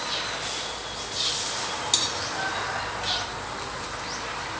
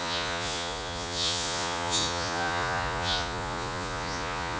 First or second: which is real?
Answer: first